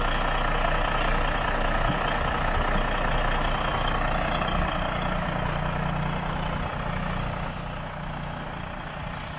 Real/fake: real